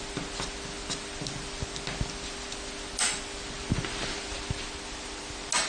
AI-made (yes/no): no